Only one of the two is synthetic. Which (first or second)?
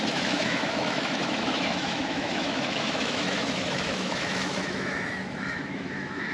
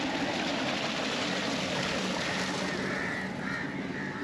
first